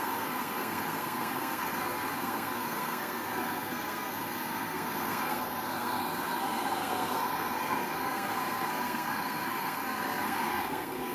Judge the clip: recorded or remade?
remade